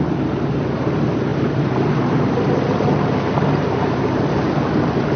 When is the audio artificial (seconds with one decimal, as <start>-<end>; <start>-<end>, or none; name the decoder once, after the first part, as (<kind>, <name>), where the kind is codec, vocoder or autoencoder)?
none